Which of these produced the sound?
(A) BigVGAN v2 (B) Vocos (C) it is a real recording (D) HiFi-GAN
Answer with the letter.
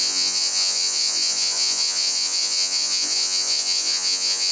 B